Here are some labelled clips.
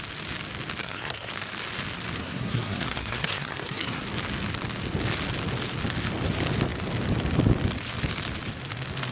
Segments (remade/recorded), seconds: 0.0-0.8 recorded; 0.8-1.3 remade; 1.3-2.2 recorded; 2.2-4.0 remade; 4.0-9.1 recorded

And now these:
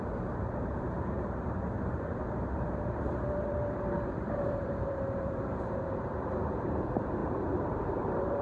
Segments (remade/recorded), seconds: 0.0-8.4 remade

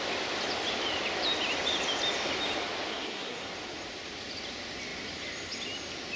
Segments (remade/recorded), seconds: 0.0-2.9 recorded; 2.9-3.5 remade; 3.5-6.2 recorded

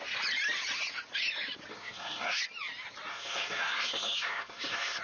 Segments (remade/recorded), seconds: 0.0-1.7 recorded; 1.7-2.4 remade; 2.4-3.1 recorded; 3.1-5.0 remade

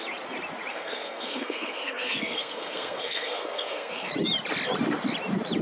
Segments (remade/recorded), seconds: 0.0-0.7 recorded; 0.7-4.1 remade; 4.1-5.6 recorded

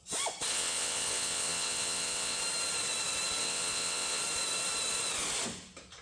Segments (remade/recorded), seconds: 0.0-0.5 recorded; 0.5-2.4 remade; 2.4-3.4 recorded; 3.4-4.2 remade; 4.2-6.0 recorded